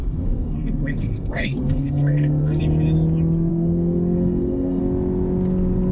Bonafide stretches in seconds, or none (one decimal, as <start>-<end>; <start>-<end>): 2.6-3.5; 4.8-5.9